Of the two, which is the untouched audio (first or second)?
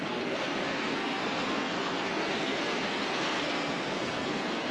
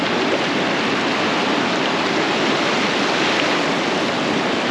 second